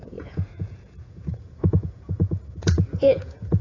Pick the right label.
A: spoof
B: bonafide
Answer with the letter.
A